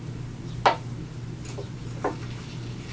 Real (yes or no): yes